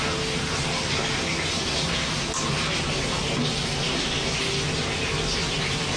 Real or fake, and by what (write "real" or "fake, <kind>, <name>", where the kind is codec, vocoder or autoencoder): real